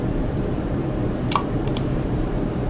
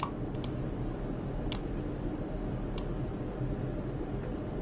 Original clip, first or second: second